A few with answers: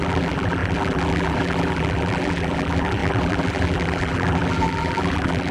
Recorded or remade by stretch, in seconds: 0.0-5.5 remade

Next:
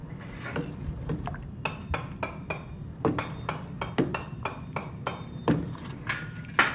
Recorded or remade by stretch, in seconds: 0.0-5.4 recorded; 5.4-6.2 remade; 6.2-6.7 recorded

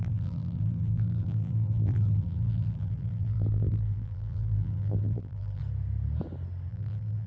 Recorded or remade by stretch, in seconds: 0.0-5.6 remade; 5.6-6.7 recorded; 6.7-7.3 remade

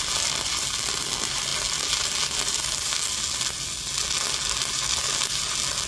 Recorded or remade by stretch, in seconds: 0.0-5.9 recorded

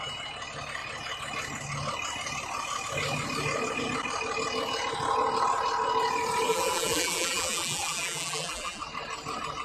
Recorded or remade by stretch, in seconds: 0.0-6.5 recorded; 6.5-8.8 remade; 8.8-9.6 recorded

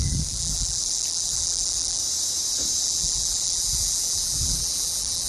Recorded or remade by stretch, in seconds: 0.0-2.0 remade; 2.0-2.8 recorded; 2.8-5.3 remade

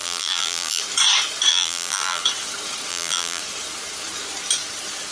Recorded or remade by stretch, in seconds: 0.0-0.8 remade; 0.8-1.5 recorded; 1.5-2.2 remade; 2.2-2.9 recorded; 2.9-3.4 remade; 3.4-5.1 recorded

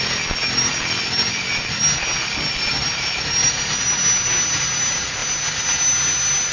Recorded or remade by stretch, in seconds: 0.0-6.5 recorded